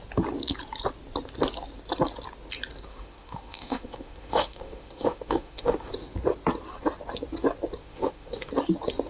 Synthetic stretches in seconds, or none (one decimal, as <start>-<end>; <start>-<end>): 2.9-5.9; 7.8-8.5